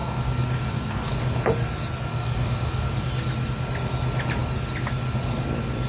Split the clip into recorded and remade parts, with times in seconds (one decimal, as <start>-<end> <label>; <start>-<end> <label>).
0.0-1.1 remade; 1.1-2.1 recorded; 2.1-3.1 remade; 3.1-5.9 recorded